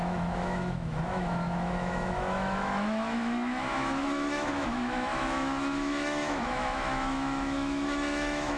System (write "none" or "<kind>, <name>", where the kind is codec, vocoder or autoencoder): autoencoder, DAC-VAE